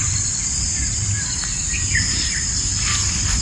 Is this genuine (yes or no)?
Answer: no